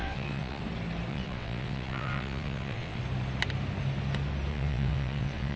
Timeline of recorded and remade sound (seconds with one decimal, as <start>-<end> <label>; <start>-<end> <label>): 0.0-0.6 remade; 0.6-1.1 recorded; 1.1-3.0 remade; 3.0-4.5 recorded; 4.5-5.6 remade